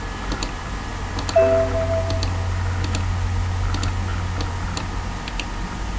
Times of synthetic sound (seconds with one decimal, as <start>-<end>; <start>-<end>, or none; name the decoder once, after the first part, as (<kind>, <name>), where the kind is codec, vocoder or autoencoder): none